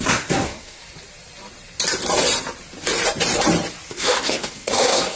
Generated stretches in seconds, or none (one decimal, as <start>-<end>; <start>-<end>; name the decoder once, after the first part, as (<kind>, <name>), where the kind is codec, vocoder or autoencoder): 0.0-0.8 (codec, SNAC); 3.9-5.2